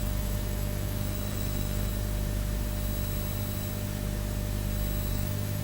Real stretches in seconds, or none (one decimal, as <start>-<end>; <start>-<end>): 1.9-5.1